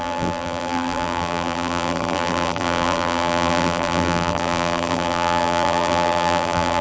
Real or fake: fake